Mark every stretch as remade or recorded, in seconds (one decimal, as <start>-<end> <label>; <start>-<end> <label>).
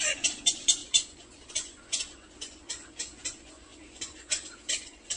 0.0-5.2 remade